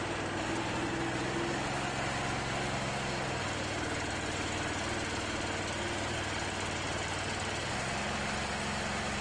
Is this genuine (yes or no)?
yes